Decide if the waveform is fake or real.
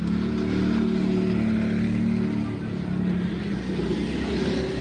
real